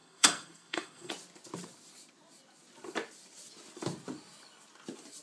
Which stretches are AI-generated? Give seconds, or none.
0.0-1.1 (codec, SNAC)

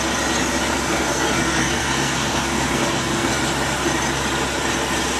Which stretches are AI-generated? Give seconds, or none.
0.7-3.3 (codec, SNAC)

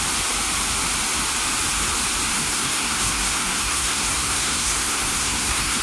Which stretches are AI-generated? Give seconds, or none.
2.3-5.8 (codec, SNAC)

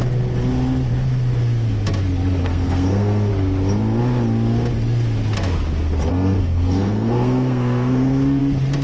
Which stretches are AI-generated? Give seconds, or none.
2.4-3.3 (codec, SNAC); 6.1-8.4

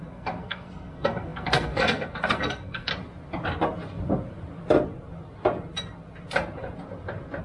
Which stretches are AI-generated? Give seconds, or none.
0.0-2.9 (codec, SNAC)

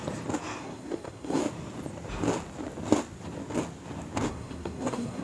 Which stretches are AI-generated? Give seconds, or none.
0.6-1.4 (codec, SNAC); 4.3-5.2

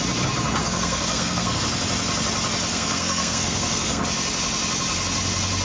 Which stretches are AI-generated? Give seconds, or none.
0.6-1.6 (codec, SNAC); 2.7-4.0

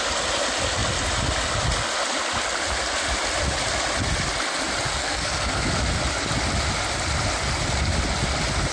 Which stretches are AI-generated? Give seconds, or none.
5.0-5.6 (codec, SNAC)